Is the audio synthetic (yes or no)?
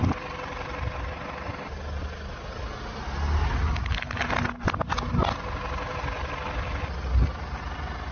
no